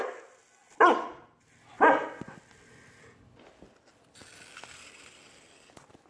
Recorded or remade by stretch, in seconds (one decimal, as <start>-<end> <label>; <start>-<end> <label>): 0.0-6.1 recorded